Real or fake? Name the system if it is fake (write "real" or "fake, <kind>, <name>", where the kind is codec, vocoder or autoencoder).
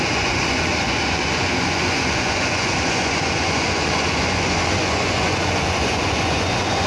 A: fake, vocoder, Vocos